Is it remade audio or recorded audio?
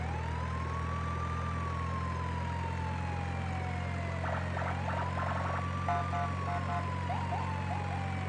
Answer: recorded